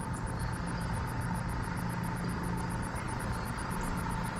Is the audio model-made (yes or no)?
no